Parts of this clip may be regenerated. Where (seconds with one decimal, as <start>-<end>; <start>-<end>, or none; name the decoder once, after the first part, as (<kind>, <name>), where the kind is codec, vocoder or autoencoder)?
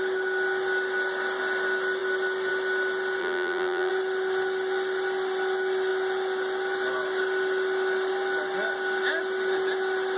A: 3.2-3.9 (vocoder, BigVGAN v2)